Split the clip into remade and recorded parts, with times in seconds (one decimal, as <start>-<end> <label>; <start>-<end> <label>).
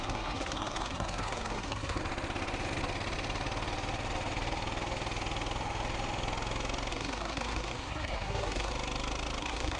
0.0-2.0 remade; 2.0-6.9 recorded; 6.9-8.7 remade; 8.7-9.4 recorded; 9.4-9.8 remade